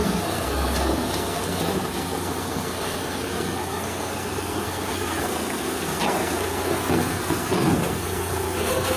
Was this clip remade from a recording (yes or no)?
yes